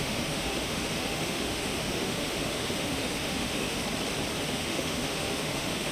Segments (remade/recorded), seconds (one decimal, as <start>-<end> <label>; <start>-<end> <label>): 0.0-3.8 remade; 3.8-4.4 recorded; 4.4-5.9 remade

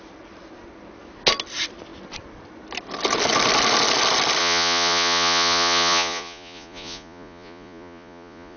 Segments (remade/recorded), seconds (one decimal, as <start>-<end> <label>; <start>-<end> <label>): 0.0-4.4 recorded; 4.4-8.6 remade

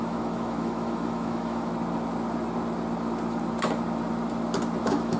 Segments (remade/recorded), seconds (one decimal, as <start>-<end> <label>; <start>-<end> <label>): 0.0-1.7 remade; 1.7-4.8 recorded; 4.8-5.2 remade

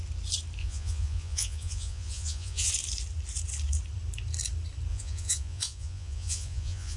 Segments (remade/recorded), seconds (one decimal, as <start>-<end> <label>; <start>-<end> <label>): 0.0-0.6 recorded; 0.6-2.7 remade; 2.7-4.9 recorded; 4.9-7.0 remade

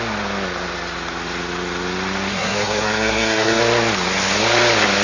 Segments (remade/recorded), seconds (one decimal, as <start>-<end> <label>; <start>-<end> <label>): 0.0-2.3 recorded; 2.3-3.6 remade; 3.6-5.0 recorded

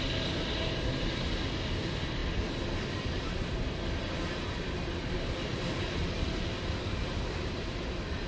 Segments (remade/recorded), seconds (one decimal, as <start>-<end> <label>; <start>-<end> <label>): 0.0-8.3 recorded

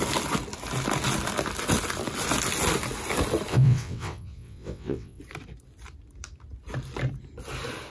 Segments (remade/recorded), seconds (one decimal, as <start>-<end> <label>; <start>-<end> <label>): 0.0-3.5 recorded; 3.5-5.2 remade; 5.2-7.9 recorded

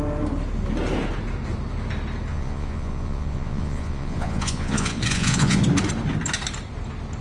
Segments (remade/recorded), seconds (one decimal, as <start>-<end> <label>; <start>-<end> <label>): 0.0-2.3 recorded; 2.3-5.6 remade; 5.6-7.2 recorded